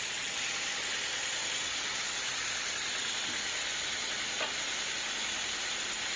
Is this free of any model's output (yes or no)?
yes